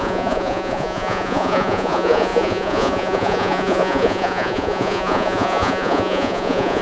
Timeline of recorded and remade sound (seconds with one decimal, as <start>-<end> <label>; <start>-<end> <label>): 0.0-6.8 remade